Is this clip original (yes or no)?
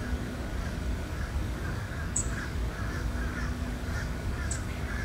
no